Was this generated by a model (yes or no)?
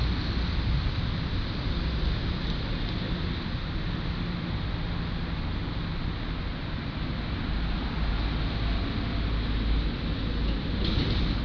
no